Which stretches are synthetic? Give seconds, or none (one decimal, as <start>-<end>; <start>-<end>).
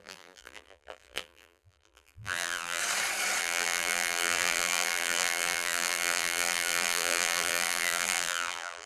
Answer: 0.0-2.8; 3.4-8.9